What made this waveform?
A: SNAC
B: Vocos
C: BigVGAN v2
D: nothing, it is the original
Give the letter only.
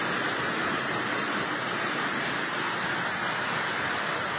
D